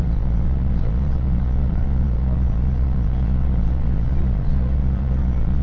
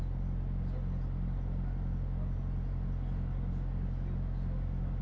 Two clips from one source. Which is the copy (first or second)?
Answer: first